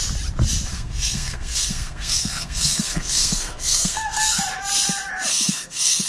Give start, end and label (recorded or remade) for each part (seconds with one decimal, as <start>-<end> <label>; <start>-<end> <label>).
0.0-0.7 recorded; 0.7-4.4 remade; 4.4-5.3 recorded; 5.3-6.1 remade